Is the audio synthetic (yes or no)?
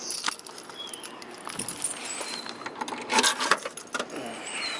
no